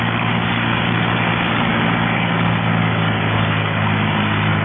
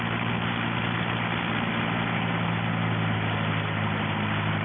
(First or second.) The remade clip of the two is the first